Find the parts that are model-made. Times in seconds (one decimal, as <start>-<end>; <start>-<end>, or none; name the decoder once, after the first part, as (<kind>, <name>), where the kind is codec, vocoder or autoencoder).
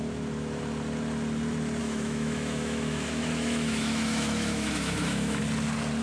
1.8-5.4 (autoencoder, DAC-VAE)